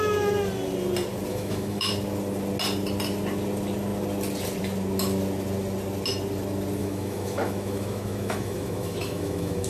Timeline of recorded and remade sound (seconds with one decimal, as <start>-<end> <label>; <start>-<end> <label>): 0.0-1.3 recorded; 1.3-1.9 remade; 1.9-6.8 recorded; 6.8-9.7 remade